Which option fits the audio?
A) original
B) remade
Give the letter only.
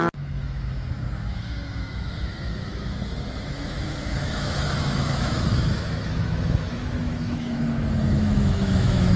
B